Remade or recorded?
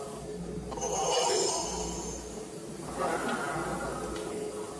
recorded